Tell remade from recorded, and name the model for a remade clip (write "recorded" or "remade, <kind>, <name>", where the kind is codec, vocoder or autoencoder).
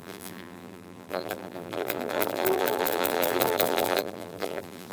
remade, vocoder, BigVGAN v2